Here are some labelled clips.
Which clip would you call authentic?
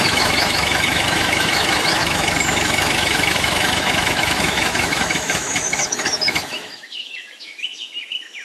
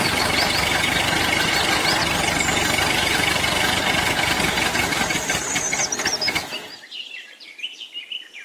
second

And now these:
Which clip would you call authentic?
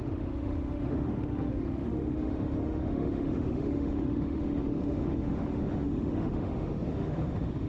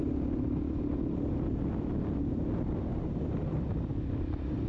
second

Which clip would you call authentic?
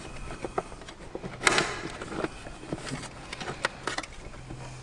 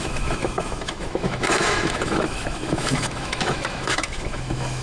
first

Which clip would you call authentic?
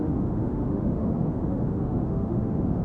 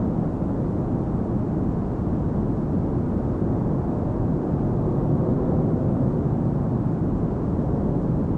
second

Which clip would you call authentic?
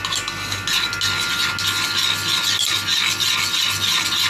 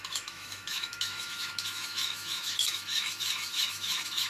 first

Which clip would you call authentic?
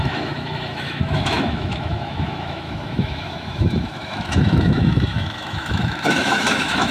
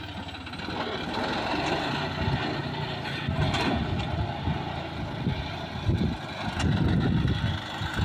second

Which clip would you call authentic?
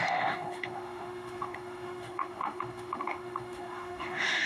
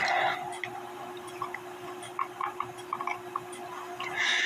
second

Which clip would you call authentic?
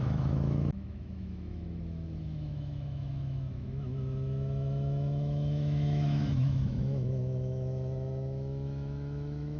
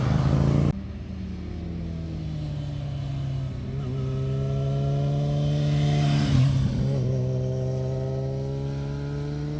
second